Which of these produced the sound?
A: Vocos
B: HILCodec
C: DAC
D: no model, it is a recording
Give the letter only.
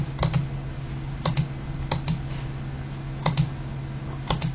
D